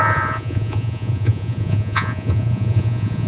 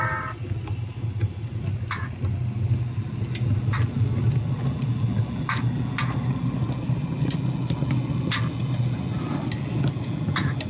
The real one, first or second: second